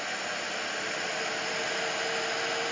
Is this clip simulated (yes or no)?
no